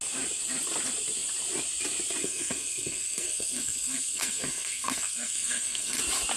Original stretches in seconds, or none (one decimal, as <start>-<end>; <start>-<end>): 0.0-2.2; 6.0-6.4